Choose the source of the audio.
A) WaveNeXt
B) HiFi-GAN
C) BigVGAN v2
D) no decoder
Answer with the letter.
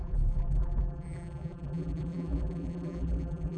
C